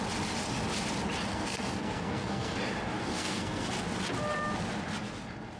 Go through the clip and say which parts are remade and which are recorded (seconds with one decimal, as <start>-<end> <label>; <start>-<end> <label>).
0.0-1.3 recorded; 1.3-2.6 remade; 2.6-3.0 recorded; 3.0-3.7 remade; 3.7-5.6 recorded